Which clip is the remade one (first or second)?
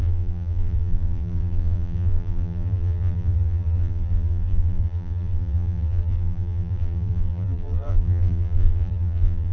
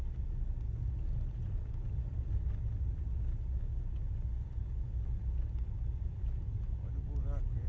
first